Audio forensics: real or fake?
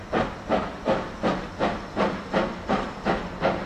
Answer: real